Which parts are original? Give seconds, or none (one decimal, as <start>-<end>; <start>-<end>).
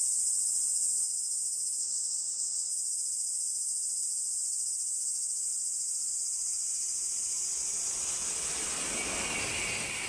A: 0.0-1.8; 2.7-10.1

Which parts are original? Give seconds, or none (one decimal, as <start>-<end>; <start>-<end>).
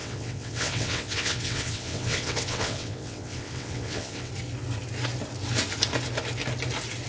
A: 4.3-7.1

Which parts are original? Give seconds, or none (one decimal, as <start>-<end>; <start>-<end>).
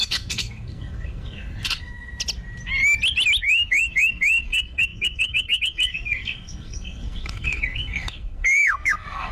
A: 2.1-3.4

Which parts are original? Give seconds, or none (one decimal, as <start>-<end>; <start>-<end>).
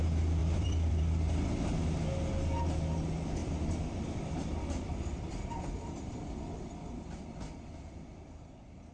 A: 0.0-0.4; 1.0-3.4; 6.4-8.9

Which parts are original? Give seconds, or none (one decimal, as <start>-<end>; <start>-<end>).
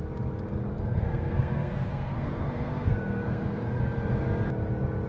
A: 0.0-0.7; 3.8-5.1